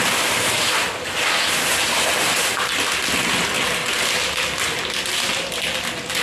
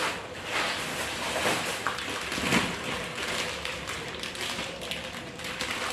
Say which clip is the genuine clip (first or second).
first